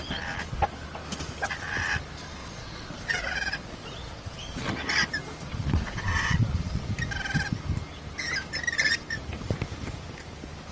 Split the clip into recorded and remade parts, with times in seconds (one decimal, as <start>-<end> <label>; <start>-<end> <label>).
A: 0.0-2.4 recorded; 2.4-4.7 remade; 4.7-5.5 recorded; 5.5-6.9 remade; 6.9-10.7 recorded